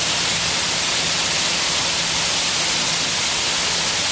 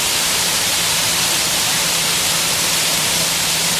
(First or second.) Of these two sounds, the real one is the first